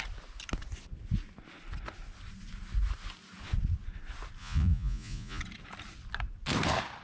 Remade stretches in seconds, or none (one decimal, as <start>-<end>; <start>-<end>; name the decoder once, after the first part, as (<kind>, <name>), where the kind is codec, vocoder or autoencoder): 4.4-5.4 (vocoder, Vocos)